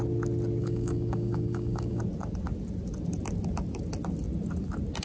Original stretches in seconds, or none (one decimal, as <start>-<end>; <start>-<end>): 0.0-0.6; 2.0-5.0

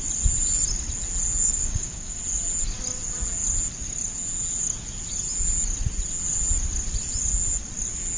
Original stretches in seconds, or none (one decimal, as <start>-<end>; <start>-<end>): 0.0-1.4; 2.2-8.2

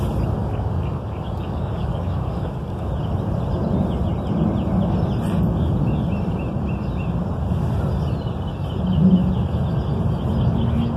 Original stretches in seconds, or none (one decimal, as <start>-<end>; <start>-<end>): 0.0-0.4; 2.9-11.0